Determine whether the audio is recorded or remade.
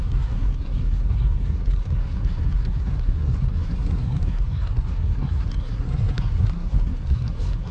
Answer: remade